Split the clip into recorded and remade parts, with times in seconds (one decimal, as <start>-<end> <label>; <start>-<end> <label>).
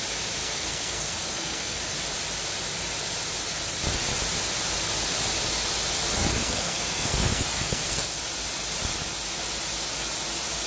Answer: 0.0-0.4 recorded; 0.4-1.8 remade; 1.8-6.3 recorded; 6.3-8.2 remade; 8.2-10.7 recorded